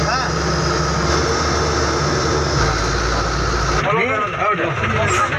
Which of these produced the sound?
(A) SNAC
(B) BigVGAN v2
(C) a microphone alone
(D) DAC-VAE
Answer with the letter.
C